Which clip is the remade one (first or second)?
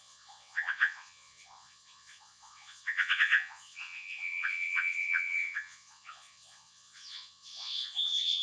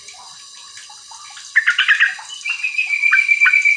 first